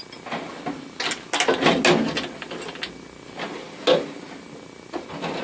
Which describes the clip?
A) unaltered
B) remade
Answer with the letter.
A